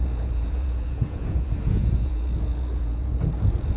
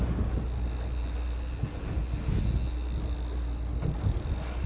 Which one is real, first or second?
second